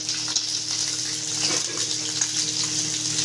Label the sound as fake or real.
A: real